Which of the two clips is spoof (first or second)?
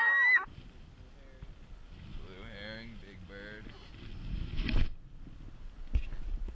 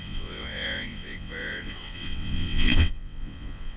second